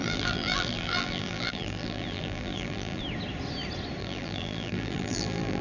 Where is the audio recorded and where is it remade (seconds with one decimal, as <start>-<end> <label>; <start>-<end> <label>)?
0.0-3.0 remade; 3.0-4.0 recorded; 4.0-5.6 remade